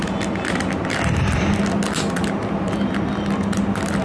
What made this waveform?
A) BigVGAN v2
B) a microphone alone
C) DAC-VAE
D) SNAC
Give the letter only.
B